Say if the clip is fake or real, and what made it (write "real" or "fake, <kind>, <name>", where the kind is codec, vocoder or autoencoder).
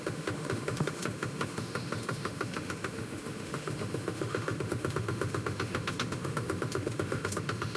fake, autoencoder, DAC-VAE